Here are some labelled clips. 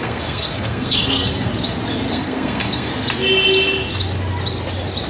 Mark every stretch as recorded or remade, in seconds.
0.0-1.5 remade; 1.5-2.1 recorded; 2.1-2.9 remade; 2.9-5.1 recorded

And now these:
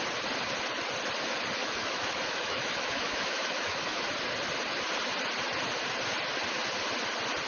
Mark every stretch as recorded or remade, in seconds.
0.0-1.6 recorded; 1.6-4.0 remade; 4.0-7.5 recorded